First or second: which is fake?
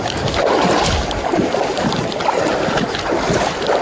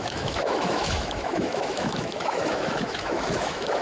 second